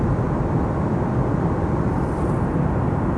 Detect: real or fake real